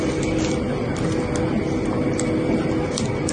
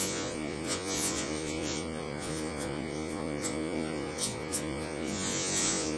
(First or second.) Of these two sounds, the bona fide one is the first